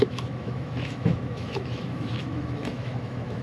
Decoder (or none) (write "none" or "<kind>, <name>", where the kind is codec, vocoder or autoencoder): autoencoder, DAC-VAE